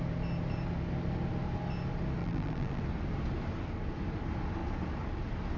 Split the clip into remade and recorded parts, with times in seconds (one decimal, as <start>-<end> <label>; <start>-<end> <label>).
0.0-2.2 recorded; 2.2-2.8 remade; 2.8-5.6 recorded